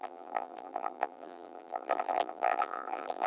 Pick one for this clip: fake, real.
fake